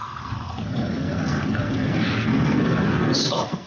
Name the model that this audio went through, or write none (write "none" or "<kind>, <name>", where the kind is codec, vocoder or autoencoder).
codec, SNAC